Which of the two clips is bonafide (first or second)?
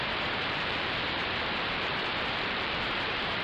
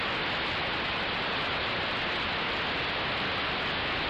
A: second